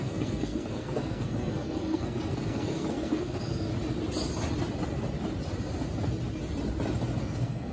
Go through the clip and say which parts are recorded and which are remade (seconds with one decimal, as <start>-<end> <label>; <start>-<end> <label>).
0.0-3.7 remade; 3.7-7.2 recorded; 7.2-7.7 remade